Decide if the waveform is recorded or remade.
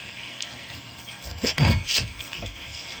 remade